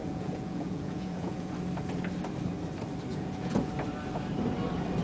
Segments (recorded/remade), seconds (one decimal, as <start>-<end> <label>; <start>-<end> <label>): 0.0-1.5 remade; 1.5-3.1 recorded; 3.1-3.7 remade; 3.7-5.0 recorded